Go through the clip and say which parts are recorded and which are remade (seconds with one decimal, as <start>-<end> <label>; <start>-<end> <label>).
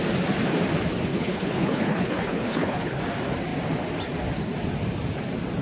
0.0-1.1 recorded; 1.1-3.0 remade; 3.0-5.6 recorded